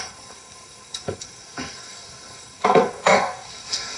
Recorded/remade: remade